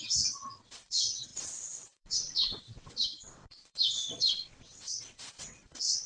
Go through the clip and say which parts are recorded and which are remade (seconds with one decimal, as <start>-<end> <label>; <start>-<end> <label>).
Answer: 0.0-6.1 remade